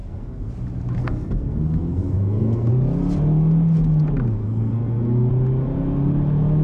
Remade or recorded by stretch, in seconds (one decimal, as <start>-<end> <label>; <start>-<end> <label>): 0.0-0.5 remade; 0.5-1.0 recorded; 1.0-2.7 remade; 2.7-4.4 recorded; 4.4-5.3 remade; 5.3-6.6 recorded